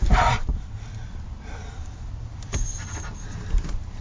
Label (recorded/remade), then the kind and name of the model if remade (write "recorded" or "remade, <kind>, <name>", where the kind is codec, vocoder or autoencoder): remade, vocoder, BigVGAN v2